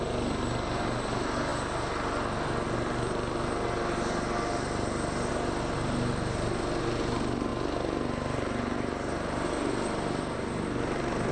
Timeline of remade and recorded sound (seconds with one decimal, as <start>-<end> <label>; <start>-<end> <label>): 0.0-11.3 recorded